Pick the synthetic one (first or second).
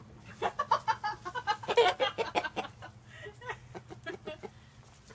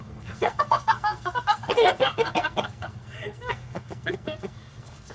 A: second